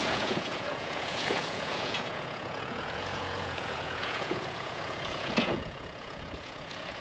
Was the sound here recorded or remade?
remade